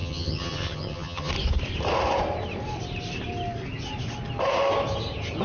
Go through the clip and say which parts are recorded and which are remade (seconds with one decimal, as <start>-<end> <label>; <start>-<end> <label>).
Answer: 0.0-1.3 remade; 1.3-5.4 recorded